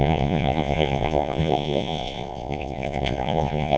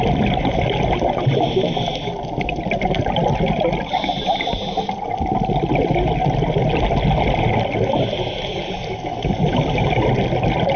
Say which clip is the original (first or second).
second